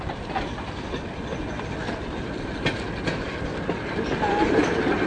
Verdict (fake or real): fake